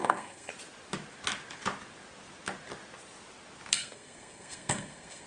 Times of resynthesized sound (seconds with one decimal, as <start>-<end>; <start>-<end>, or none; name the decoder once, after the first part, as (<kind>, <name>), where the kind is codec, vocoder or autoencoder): 0.0-0.5 (codec, SNAC); 3.7-5.3